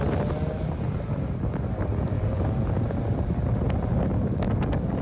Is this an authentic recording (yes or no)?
yes